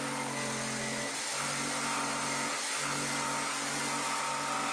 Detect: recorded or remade recorded